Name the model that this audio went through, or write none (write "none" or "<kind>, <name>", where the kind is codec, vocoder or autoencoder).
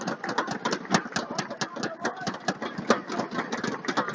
none